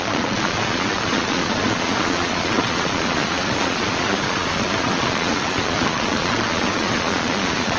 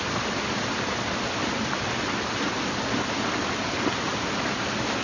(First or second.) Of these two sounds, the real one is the second